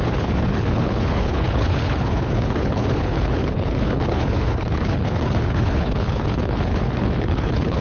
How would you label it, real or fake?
fake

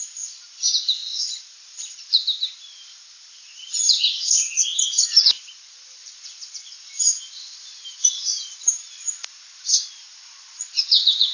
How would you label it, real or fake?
fake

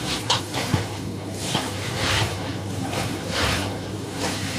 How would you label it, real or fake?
fake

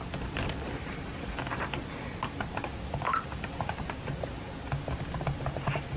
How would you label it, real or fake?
real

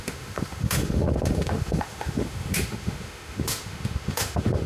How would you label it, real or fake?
fake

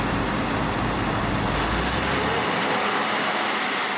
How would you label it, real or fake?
real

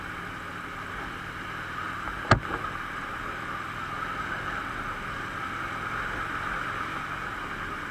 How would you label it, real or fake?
real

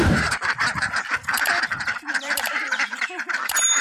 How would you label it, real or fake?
fake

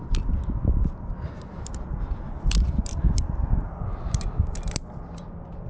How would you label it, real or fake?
real